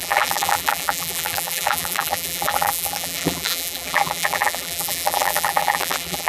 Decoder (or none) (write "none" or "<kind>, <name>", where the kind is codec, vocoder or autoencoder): vocoder, BigVGAN v2